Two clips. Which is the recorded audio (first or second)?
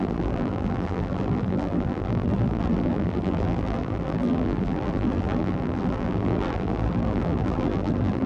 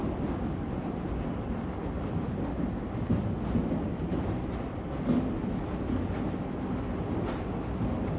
second